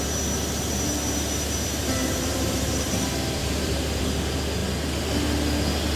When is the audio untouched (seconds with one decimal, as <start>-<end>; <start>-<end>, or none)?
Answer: 0.0-2.0; 3.0-3.4; 4.0-6.0